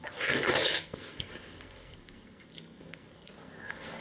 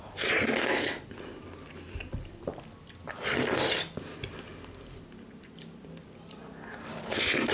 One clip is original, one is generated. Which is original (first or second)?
second